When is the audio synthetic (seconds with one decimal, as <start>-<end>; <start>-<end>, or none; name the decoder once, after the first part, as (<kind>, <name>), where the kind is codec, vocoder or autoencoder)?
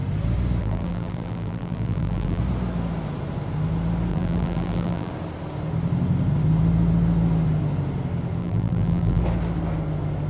0.6-2.4 (vocoder, BigVGAN v2); 4.1-5.1; 8.4-9.2